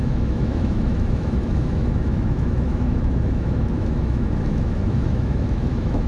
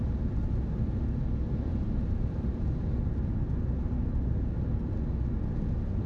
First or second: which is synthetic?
first